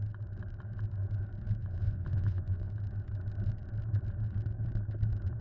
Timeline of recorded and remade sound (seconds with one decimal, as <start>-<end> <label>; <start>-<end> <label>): 0.0-1.6 recorded; 1.6-2.7 remade; 2.7-5.4 recorded